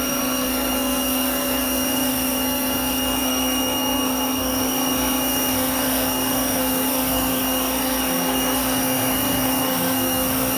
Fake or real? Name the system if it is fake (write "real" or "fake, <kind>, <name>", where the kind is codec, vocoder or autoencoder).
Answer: fake, codec, SNAC